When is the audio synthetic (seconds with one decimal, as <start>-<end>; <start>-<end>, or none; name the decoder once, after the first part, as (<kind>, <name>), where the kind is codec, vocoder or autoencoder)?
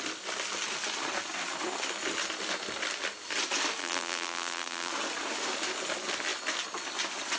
3.8-4.9 (vocoder, BigVGAN v2)